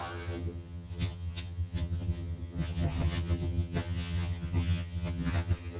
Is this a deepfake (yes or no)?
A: yes